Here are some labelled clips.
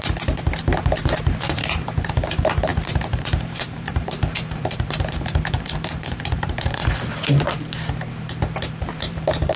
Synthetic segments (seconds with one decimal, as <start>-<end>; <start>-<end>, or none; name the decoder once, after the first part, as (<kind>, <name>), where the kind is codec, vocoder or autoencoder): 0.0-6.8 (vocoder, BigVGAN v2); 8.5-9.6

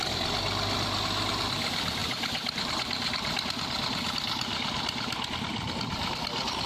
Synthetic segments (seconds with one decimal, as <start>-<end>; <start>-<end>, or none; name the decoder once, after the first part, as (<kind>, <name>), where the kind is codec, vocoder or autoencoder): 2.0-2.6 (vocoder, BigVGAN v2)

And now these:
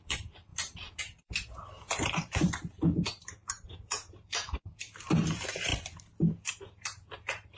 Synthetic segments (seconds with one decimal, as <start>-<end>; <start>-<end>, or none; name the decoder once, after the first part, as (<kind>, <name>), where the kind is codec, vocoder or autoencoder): 0.0-5.7 (vocoder, BigVGAN v2); 6.5-7.6